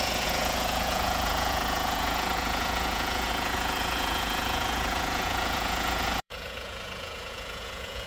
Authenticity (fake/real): fake